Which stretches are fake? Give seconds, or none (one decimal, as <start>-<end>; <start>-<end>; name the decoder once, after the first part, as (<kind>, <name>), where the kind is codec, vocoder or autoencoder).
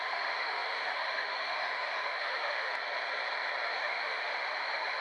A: 0.0-2.7 (autoencoder, DAC-VAE); 3.7-5.0